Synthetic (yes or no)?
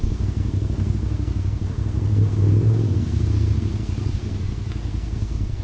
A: yes